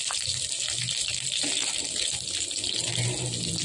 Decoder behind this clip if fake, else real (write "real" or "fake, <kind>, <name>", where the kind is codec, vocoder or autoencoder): real